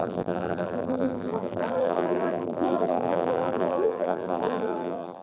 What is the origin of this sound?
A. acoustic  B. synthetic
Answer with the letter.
B